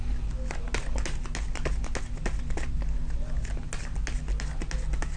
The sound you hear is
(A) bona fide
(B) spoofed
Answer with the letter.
A